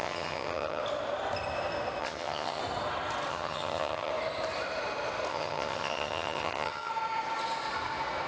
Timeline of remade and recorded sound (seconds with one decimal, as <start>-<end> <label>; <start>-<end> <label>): 0.0-0.8 remade; 0.8-2.0 recorded; 2.0-2.6 remade; 2.6-3.3 recorded; 3.3-4.1 remade; 4.1-5.3 recorded; 5.3-6.9 remade; 6.9-8.3 recorded